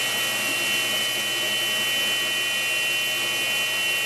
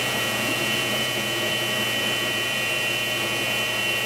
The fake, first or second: second